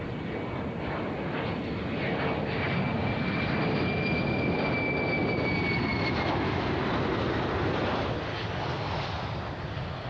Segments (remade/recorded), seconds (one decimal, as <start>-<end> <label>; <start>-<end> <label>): 0.0-10.1 recorded